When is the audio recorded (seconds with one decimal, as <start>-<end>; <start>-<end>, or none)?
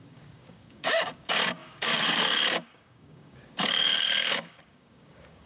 none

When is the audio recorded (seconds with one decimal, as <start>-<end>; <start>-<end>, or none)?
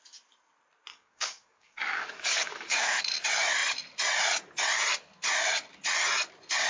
0.0-0.9; 3.0-6.7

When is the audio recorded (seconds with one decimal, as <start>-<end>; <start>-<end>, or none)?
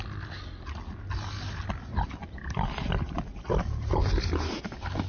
0.0-5.1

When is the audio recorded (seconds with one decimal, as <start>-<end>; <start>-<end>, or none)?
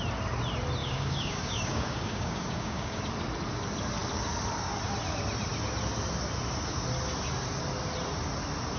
0.0-0.8; 3.0-8.8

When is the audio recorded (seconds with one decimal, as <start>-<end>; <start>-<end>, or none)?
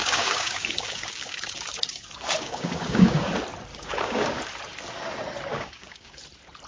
3.3-3.7; 4.4-5.5; 6.2-6.7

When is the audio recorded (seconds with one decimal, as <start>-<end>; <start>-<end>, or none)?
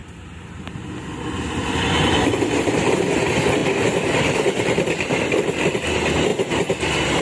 0.0-7.2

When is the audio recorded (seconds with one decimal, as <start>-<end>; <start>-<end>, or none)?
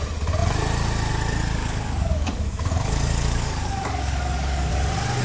0.0-1.6; 4.7-5.2